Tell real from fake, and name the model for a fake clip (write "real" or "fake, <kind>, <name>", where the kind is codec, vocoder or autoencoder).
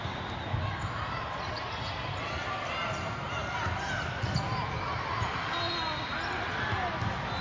real